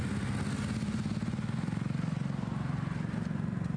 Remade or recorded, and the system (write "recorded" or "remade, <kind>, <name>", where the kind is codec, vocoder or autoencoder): recorded